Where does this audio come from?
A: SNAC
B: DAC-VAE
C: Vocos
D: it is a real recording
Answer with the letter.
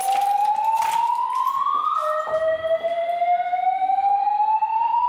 D